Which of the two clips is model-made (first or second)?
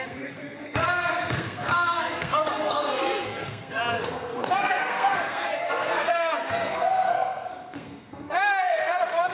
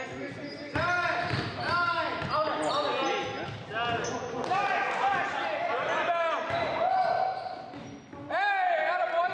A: first